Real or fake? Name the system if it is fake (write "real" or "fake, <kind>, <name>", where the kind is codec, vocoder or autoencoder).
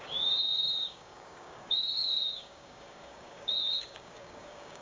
fake, codec, DAC